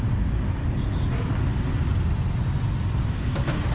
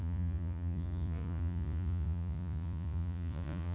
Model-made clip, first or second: second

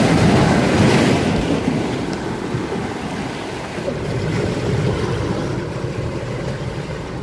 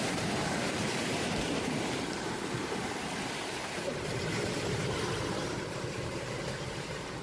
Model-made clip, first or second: second